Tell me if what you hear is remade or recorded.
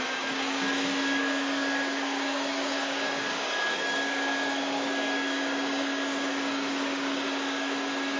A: remade